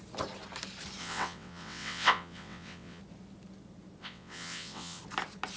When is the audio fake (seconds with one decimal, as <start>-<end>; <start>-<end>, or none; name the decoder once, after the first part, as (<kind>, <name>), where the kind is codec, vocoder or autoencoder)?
1.0-3.0 (vocoder, WaveNeXt); 4.0-5.0